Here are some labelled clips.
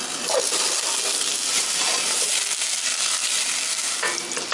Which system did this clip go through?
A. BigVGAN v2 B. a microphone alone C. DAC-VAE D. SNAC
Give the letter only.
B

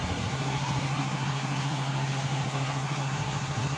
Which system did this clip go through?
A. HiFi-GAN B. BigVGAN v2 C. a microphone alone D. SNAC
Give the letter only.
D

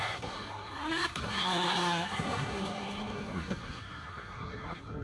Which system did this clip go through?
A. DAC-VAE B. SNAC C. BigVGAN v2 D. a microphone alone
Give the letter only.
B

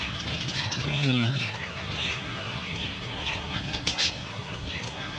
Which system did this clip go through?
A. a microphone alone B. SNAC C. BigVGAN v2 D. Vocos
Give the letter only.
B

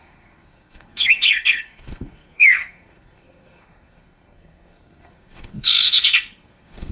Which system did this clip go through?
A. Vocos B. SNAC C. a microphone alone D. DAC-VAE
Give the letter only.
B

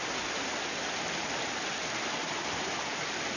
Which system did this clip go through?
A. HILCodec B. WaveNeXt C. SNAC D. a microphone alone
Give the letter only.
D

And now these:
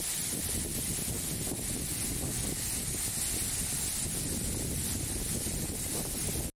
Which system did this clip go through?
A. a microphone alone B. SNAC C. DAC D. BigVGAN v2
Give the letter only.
A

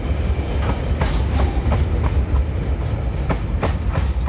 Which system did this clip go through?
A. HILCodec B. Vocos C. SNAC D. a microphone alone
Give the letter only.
D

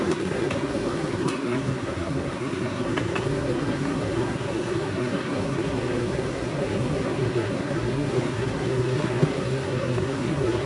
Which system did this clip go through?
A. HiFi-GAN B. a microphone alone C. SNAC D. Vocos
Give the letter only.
C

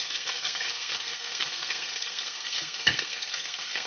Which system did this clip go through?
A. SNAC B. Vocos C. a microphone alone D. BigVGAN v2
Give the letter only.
A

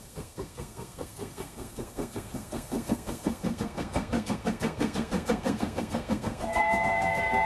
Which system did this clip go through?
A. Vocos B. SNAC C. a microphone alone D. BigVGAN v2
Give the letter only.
B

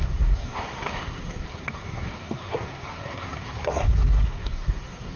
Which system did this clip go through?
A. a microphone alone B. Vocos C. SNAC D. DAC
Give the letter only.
C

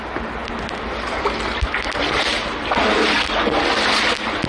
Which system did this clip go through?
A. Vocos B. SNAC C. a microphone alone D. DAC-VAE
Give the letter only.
C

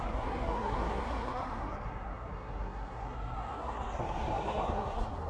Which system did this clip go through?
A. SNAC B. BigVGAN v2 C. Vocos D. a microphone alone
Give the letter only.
A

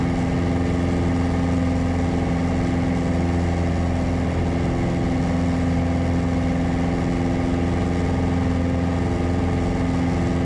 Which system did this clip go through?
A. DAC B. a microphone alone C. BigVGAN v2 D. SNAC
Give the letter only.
B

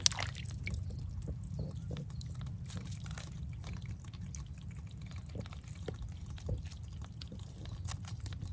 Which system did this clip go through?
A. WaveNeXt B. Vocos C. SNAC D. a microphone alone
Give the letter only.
D